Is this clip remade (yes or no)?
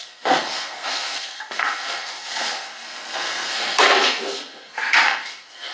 yes